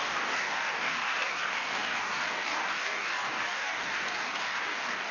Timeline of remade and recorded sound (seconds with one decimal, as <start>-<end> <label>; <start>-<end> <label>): 0.0-5.1 remade